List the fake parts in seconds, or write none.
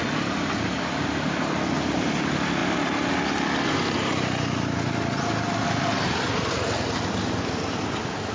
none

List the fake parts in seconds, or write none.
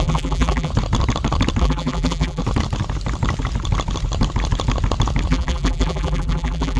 0.0-0.7 (vocoder, BigVGAN v2); 1.6-2.4; 5.3-6.8